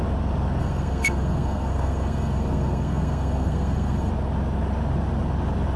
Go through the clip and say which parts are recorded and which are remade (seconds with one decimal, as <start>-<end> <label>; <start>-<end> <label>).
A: 0.0-0.6 recorded; 0.6-4.1 remade; 4.1-5.8 recorded